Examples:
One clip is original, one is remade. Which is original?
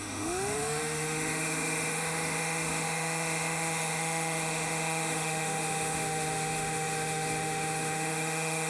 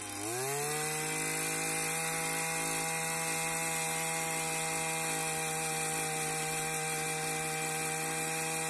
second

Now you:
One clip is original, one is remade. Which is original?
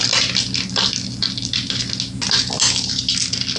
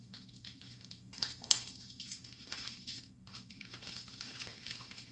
first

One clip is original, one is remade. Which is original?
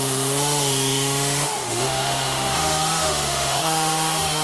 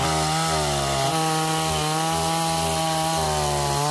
second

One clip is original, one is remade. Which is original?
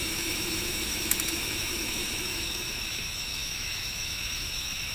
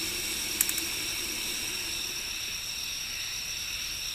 second